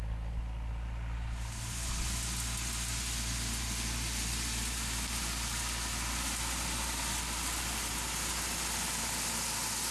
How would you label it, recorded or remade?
recorded